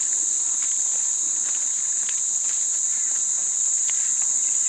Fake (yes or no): no